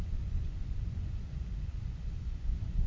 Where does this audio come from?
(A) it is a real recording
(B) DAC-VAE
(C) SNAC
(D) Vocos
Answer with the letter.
D